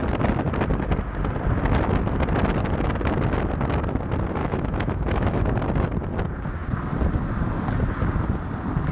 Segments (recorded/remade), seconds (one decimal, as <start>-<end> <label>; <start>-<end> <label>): 0.0-4.4 recorded; 4.4-5.4 remade; 5.4-8.9 recorded